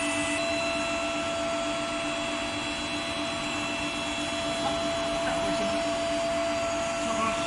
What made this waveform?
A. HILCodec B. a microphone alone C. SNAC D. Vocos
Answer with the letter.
B